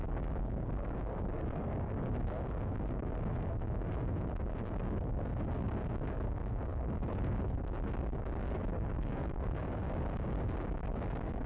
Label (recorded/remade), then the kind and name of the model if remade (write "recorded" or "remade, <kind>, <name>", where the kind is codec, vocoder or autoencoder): remade, codec, DAC